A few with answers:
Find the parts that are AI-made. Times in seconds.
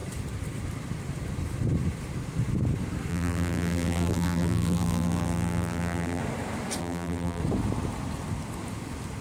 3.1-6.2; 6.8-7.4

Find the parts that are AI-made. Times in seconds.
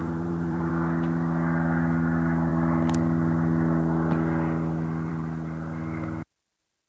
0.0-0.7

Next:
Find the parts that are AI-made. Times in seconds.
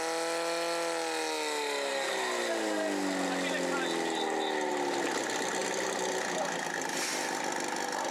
none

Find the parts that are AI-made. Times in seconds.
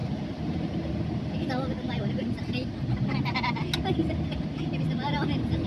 0.0-0.9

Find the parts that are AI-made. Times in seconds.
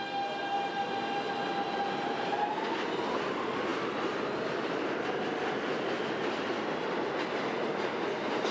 none